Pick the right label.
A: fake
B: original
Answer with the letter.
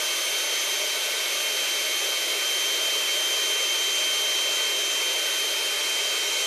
B